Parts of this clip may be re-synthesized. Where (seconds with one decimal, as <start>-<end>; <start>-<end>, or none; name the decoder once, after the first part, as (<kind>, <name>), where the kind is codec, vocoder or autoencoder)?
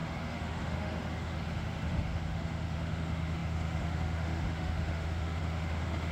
0.0-6.1 (autoencoder, DAC-VAE)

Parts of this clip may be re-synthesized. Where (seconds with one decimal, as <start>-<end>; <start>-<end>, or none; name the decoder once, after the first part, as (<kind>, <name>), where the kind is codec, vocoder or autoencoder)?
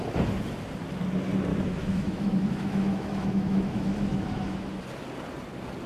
1.5-4.8 (autoencoder, DAC-VAE)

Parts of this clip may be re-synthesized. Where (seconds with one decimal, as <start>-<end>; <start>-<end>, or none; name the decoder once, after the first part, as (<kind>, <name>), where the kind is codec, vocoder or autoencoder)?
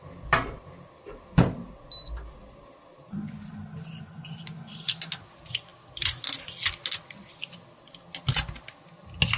none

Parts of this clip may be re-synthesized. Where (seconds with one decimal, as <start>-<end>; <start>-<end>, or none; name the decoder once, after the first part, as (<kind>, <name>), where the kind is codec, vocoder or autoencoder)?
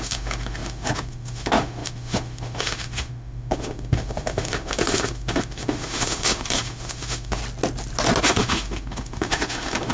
0.0-7.4 (autoencoder, DAC-VAE); 8.2-9.9